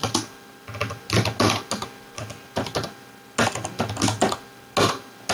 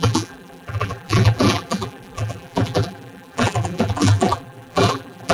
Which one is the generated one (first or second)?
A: second